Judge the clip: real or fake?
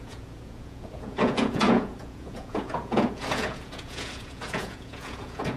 fake